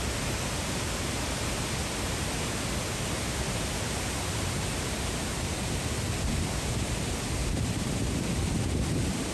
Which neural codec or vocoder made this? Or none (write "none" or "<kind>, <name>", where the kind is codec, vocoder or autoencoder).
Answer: none